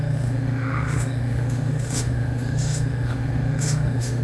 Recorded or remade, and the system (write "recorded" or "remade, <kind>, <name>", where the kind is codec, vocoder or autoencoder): remade, autoencoder, DAC-VAE